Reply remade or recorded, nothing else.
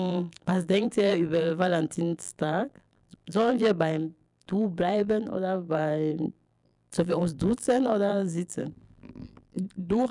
remade